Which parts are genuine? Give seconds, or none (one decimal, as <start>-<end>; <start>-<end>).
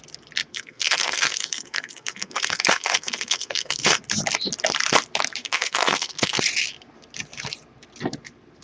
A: 0.0-0.5; 4.0-5.4; 6.4-8.6